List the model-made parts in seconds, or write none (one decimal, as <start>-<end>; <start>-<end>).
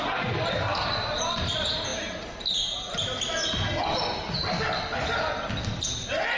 none